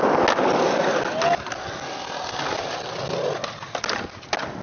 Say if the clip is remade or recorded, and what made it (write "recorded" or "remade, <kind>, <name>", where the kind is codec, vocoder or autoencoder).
recorded